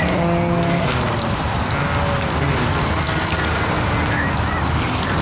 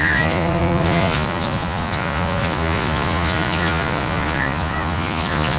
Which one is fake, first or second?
second